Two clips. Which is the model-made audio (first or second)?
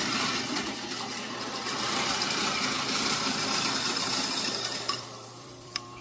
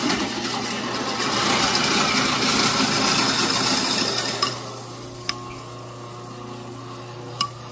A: first